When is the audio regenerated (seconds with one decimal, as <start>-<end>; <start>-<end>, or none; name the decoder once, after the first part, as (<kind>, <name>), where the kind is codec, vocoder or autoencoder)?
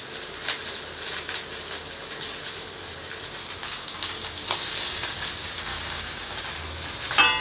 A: 3.6-5.3 (codec, DAC); 5.7-6.4